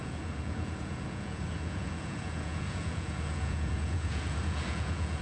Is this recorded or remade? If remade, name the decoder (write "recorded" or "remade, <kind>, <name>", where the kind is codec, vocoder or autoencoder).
remade, vocoder, Vocos